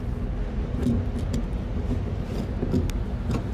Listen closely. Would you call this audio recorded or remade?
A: recorded